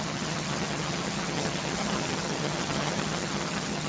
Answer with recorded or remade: remade